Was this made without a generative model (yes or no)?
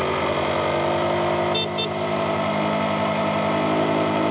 yes